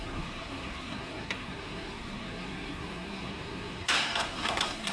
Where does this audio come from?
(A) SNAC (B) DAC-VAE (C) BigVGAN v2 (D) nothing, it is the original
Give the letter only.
A